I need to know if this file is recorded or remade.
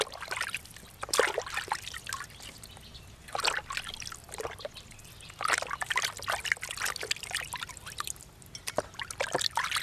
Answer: recorded